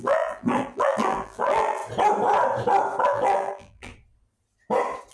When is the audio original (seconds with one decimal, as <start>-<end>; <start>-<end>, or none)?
1.8-3.0; 3.9-5.1